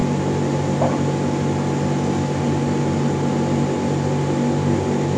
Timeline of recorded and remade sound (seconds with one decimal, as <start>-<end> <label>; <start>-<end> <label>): 0.0-5.2 recorded